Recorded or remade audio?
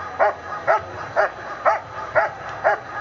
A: recorded